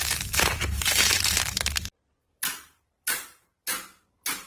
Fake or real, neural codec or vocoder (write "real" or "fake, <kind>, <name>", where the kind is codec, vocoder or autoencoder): fake, vocoder, BigVGAN v2